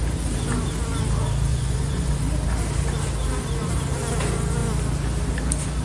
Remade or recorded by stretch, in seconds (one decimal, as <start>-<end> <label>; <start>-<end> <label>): 0.0-1.5 recorded; 1.5-2.2 remade; 2.2-5.8 recorded

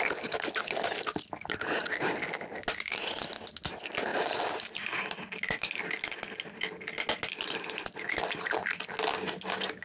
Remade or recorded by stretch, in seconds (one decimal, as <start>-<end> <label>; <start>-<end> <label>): 0.0-9.8 recorded

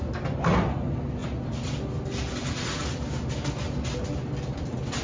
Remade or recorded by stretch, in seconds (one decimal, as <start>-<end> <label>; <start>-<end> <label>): 0.0-5.0 recorded

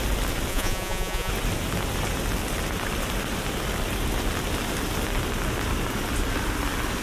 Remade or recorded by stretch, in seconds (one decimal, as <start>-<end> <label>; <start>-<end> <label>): 0.0-0.5 recorded; 0.5-1.3 remade; 1.3-7.0 recorded